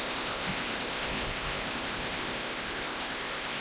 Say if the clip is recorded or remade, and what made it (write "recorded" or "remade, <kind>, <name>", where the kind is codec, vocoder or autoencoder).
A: remade, codec, ZipCodec